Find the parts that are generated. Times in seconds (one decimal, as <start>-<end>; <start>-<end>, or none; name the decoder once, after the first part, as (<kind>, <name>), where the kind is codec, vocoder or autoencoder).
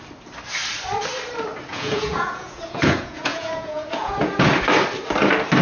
1.7-4.5 (vocoder, Vocos)